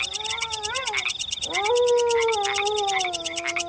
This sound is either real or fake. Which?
real